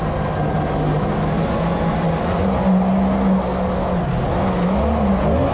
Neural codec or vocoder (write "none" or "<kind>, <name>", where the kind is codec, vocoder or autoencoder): none